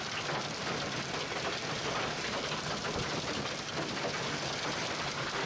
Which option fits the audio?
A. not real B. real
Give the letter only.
B